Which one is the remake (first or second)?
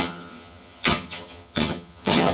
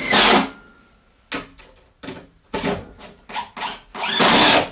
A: first